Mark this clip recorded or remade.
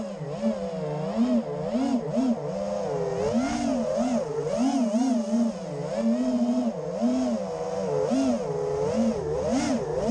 recorded